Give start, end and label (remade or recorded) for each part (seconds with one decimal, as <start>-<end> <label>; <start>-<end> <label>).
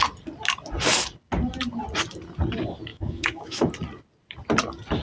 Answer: 0.0-2.9 recorded; 2.9-3.7 remade; 3.7-5.0 recorded